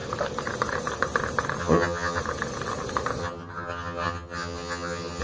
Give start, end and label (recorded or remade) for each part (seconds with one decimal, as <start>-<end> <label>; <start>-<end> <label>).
0.0-1.6 recorded; 1.6-2.2 remade; 2.2-3.2 recorded; 3.2-5.2 remade